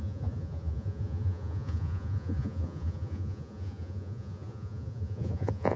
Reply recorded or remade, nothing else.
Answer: remade